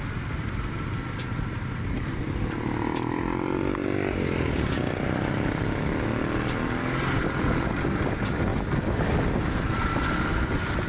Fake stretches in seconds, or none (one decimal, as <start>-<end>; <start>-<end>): none